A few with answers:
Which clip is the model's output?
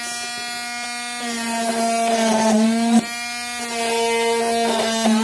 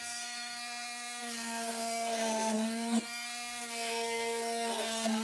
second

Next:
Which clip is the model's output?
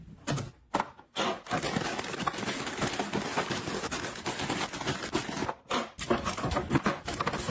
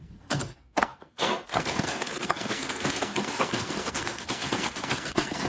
second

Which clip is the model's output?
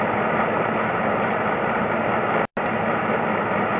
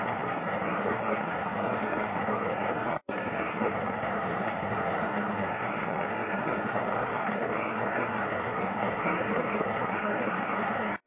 second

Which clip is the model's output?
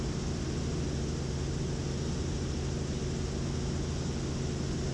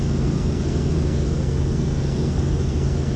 second